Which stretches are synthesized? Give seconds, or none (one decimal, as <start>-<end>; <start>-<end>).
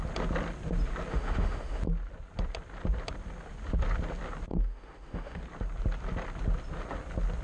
1.1-1.8; 4.5-5.4